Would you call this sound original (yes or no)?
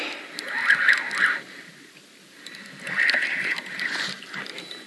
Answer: yes